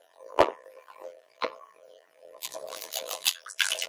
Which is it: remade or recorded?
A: remade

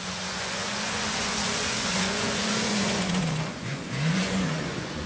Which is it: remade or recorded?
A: remade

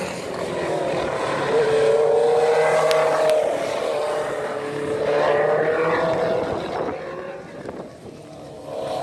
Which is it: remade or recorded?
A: recorded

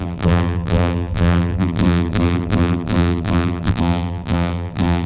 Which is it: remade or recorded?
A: remade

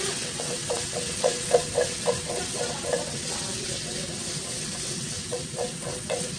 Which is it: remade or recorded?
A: remade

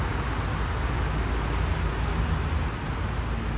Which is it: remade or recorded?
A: recorded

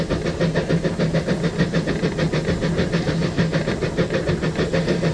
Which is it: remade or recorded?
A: recorded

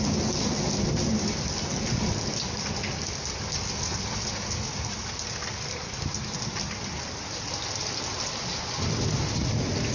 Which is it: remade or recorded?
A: recorded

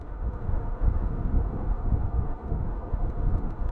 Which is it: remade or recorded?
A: remade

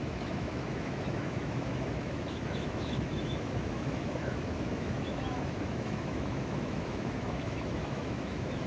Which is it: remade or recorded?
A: remade